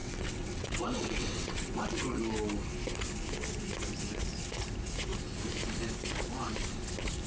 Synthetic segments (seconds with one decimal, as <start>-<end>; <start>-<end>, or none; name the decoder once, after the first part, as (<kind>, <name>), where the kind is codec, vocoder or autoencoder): 0.0-2.2 (vocoder, WaveNeXt)